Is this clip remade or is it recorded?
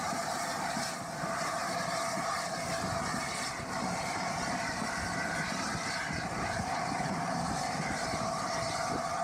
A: remade